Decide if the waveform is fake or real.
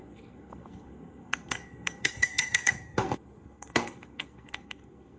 fake